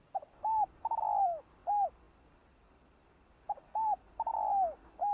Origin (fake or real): real